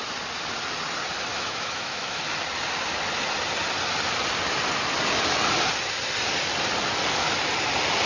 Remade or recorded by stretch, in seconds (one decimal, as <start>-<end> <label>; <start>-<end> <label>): 0.0-1.3 recorded; 1.3-2.2 remade; 2.2-8.1 recorded